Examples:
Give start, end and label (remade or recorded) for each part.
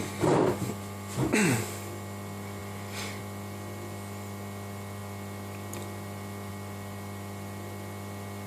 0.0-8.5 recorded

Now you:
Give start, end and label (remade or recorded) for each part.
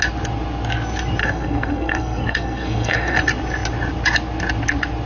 0.0-1.2 recorded; 1.2-3.2 remade; 3.2-5.1 recorded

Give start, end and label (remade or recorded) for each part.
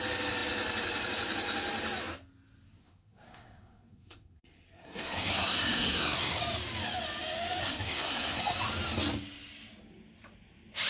0.0-2.8 recorded; 2.8-6.4 remade; 6.4-7.6 recorded; 7.6-8.4 remade; 8.4-10.9 recorded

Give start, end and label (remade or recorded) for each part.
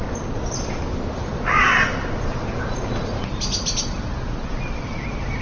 0.0-5.4 recorded